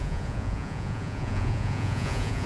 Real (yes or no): no